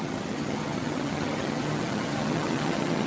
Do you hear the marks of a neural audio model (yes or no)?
yes